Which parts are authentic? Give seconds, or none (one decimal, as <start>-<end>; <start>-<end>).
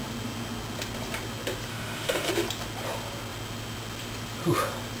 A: 0.0-1.7; 2.3-5.0